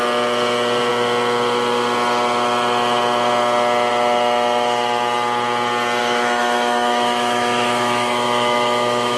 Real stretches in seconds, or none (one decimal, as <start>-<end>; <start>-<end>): 0.0-6.0